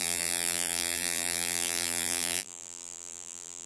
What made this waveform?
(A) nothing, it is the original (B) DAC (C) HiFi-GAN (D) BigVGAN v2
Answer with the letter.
D